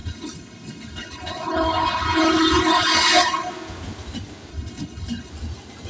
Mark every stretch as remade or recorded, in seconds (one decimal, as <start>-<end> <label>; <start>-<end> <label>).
0.0-3.5 remade; 3.5-4.5 recorded; 4.5-5.3 remade; 5.3-5.9 recorded